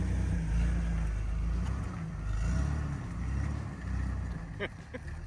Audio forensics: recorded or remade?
recorded